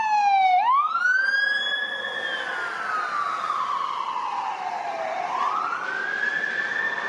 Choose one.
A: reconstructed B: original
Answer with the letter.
B